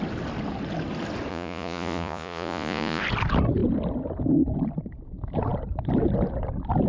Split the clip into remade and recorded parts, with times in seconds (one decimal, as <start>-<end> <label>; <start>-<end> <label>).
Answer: 0.0-1.3 recorded; 1.3-3.0 remade; 3.0-6.9 recorded